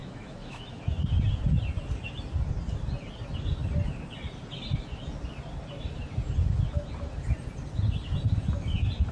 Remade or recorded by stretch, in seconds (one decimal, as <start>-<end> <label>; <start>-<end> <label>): 0.0-0.8 remade; 0.8-9.1 recorded